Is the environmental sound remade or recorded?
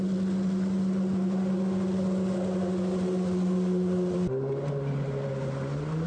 recorded